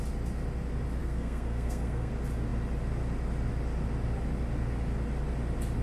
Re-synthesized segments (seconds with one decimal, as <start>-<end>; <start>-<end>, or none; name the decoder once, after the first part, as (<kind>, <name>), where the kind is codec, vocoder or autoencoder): 1.0-2.1 (codec, SNAC)